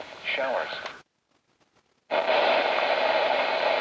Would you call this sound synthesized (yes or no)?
no